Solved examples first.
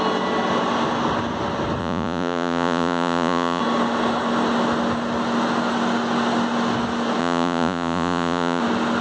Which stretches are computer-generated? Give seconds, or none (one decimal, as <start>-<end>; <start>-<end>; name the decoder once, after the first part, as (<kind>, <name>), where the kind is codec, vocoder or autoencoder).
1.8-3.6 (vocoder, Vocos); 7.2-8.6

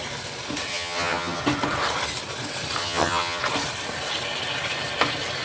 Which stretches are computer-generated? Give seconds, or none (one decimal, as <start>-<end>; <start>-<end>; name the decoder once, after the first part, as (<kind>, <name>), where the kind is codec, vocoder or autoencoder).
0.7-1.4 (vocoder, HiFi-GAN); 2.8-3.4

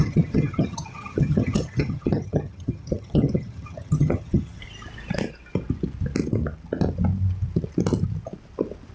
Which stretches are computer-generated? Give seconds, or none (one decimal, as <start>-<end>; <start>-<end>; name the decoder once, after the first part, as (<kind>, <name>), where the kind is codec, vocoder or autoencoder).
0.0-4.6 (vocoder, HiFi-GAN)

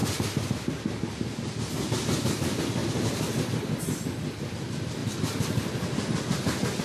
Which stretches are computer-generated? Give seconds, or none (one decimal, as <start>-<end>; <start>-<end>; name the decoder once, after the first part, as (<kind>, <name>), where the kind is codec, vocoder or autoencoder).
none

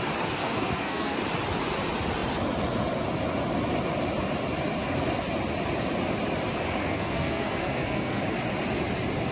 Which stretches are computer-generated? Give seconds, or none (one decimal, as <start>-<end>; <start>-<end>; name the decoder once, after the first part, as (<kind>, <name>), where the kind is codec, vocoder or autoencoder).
0.4-1.2 (codec, SNAC); 6.8-8.2

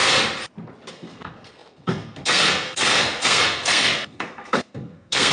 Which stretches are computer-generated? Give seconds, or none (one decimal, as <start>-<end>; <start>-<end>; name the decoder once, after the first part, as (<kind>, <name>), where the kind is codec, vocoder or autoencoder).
0.9-5.3 (codec, SNAC)

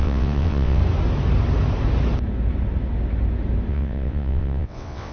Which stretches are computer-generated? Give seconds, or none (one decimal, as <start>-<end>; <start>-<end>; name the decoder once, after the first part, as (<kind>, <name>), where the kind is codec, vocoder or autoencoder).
0.0-0.8 (vocoder, WaveNeXt); 3.7-5.1